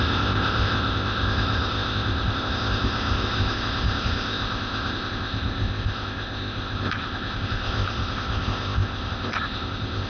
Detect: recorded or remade remade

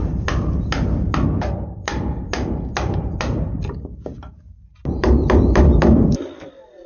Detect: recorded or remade remade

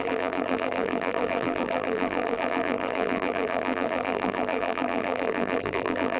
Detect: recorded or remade remade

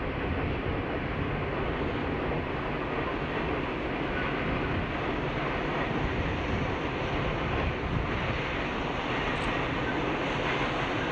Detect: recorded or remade recorded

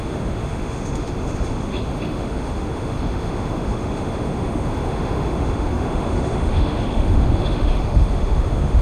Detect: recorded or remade remade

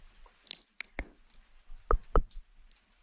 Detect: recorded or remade recorded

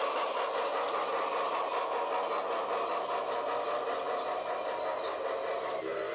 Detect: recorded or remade recorded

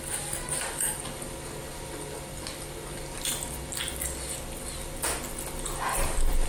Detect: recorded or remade recorded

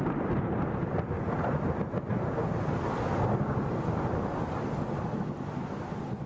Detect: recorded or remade recorded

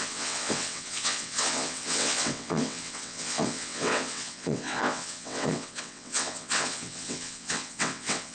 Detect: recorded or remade remade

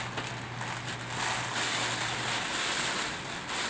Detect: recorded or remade recorded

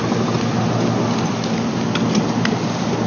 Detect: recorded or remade recorded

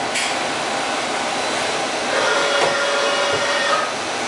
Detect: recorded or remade recorded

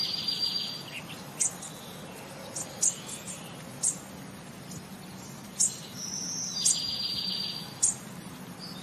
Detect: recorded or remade recorded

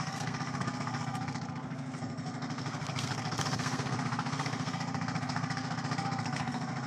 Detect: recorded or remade remade